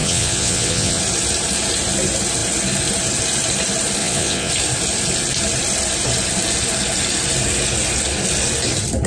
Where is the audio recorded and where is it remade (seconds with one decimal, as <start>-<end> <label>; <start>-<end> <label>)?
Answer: 0.0-1.0 remade; 1.0-4.0 recorded; 4.0-4.5 remade; 4.5-9.1 recorded